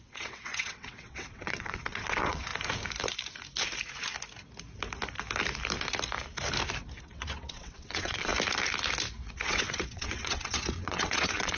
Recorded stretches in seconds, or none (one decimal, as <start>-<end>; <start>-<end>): 2.5-7.0; 8.3-9.3